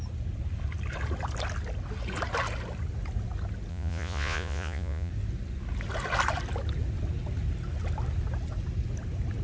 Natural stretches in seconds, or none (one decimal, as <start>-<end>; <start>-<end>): 0.0-3.7; 5.1-9.4